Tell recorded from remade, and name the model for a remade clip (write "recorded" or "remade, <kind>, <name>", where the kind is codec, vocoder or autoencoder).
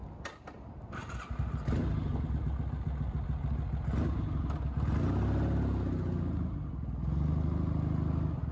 recorded